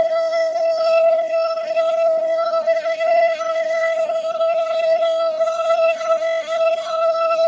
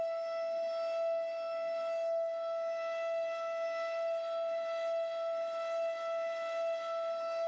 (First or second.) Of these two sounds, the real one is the second